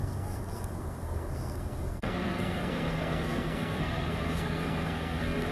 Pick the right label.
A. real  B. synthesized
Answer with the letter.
B